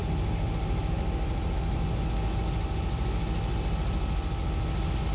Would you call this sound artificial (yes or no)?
no